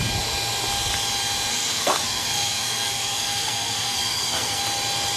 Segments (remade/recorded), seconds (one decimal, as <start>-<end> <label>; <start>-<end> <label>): 0.0-1.5 recorded; 1.5-4.6 remade; 4.6-5.2 recorded